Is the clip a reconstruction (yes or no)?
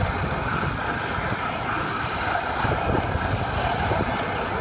no